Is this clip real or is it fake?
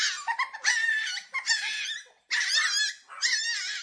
real